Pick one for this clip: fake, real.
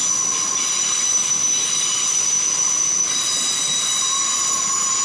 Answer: real